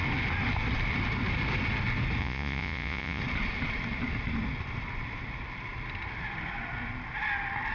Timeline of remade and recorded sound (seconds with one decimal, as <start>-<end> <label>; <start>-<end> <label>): 0.0-2.2 recorded; 2.2-3.2 remade; 3.2-7.7 recorded